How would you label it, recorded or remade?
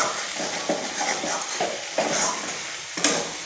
recorded